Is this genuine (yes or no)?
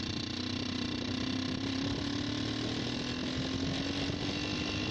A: yes